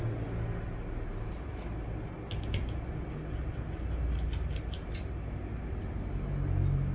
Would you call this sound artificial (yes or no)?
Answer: no